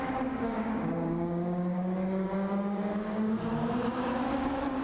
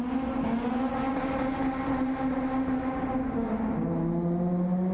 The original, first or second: second